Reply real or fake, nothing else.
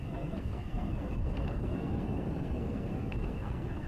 fake